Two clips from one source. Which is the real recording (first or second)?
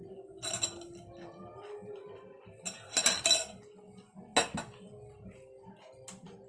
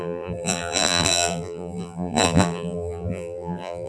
first